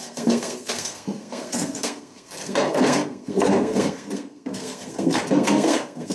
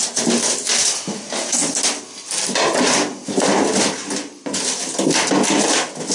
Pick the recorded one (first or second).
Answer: second